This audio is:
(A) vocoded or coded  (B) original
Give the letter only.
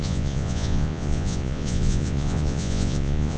A